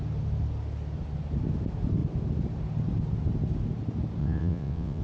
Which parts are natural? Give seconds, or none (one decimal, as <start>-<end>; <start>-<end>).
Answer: 0.0-4.2

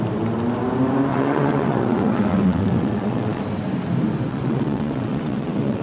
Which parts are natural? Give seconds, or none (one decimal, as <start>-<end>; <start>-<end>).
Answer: 0.0-1.1; 3.4-4.3